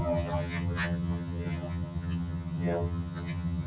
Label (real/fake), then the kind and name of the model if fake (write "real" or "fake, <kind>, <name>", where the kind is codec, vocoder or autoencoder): fake, vocoder, HiFi-GAN